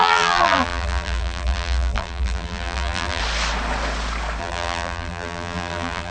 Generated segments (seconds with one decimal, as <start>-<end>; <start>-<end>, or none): 0.0-3.2; 4.4-6.1